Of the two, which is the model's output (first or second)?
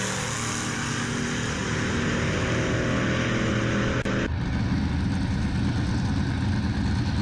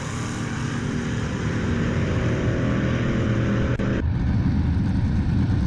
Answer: second